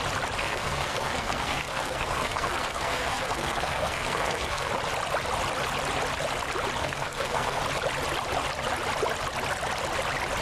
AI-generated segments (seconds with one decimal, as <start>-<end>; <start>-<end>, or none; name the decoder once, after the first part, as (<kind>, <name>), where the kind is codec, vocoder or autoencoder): 0.4-4.7 (codec, SNAC); 6.8-7.6